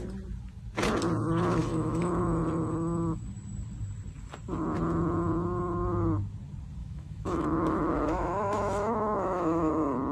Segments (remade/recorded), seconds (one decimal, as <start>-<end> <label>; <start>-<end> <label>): 0.0-1.6 recorded; 1.6-2.2 remade; 2.2-6.8 recorded; 6.8-9.7 remade; 9.7-10.1 recorded